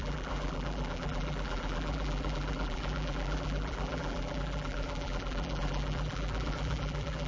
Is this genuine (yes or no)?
no